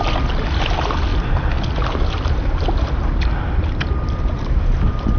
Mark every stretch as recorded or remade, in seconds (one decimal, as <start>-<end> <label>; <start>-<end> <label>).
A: 0.0-5.2 recorded